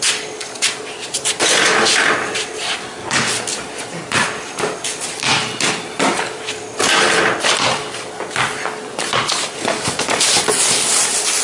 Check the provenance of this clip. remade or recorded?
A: recorded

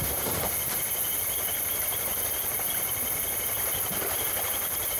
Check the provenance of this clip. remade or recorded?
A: remade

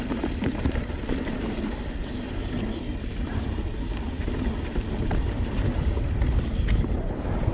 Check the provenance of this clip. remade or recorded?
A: remade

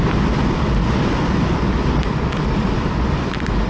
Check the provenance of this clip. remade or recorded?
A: recorded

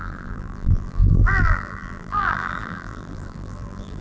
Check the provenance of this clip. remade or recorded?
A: remade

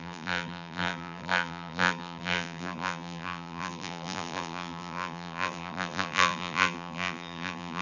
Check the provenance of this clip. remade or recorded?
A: remade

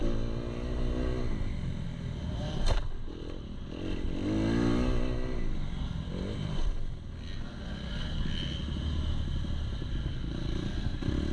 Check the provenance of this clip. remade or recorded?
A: recorded